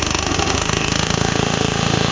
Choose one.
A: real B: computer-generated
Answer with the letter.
B